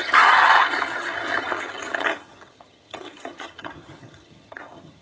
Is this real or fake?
fake